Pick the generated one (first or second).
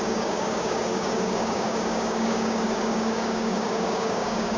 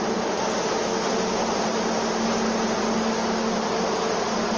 first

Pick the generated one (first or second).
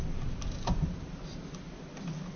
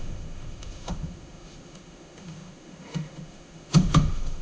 second